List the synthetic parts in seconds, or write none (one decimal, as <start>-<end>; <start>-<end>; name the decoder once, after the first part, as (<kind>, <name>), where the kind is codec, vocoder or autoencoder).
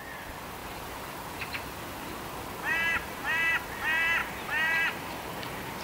0.6-3.5 (vocoder, BigVGAN v2); 4.2-5.8